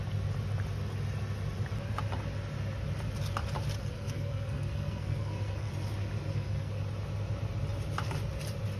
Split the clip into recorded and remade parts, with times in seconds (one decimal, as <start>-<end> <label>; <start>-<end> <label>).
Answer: 0.0-3.8 recorded; 3.8-5.7 remade; 5.7-6.3 recorded; 6.3-6.8 remade; 6.8-8.8 recorded